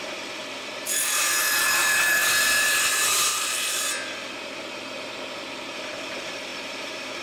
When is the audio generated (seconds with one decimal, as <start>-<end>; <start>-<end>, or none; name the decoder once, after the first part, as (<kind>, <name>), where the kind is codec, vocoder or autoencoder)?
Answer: 3.3-4.3 (vocoder, BigVGAN v2)